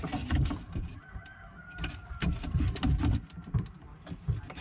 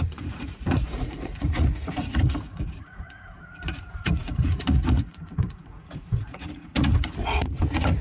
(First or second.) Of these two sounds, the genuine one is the first